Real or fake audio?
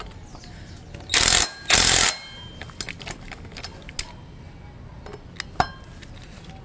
real